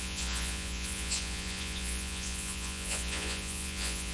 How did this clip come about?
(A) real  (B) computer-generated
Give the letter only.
B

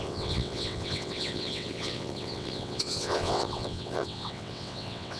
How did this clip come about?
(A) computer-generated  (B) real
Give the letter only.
A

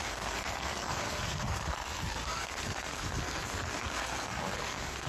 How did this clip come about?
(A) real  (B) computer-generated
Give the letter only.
B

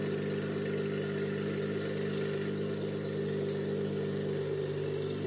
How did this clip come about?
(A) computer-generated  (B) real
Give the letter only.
B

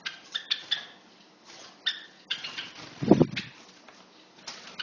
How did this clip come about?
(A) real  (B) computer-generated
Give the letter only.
A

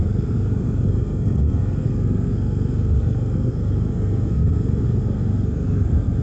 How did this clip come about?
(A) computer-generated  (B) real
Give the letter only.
A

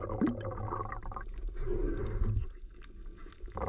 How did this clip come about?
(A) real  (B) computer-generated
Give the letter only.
A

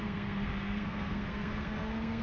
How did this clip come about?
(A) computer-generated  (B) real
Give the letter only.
A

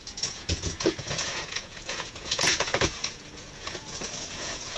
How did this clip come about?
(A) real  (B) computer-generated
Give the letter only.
B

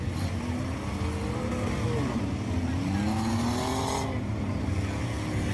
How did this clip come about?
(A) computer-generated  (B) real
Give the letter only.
B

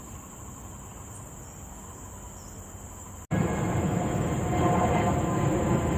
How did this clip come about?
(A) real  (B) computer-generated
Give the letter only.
A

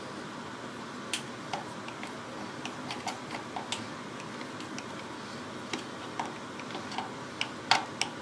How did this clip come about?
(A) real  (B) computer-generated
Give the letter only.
A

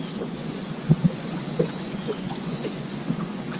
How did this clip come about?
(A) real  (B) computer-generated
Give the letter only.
B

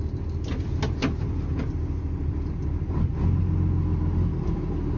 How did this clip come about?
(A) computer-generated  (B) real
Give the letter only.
B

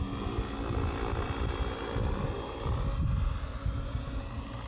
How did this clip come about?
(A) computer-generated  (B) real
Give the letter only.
B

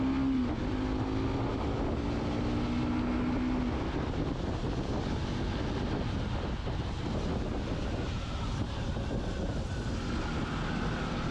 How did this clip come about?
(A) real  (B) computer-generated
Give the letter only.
A